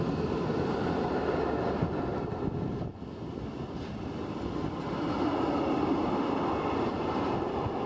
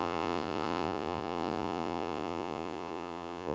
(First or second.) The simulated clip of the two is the second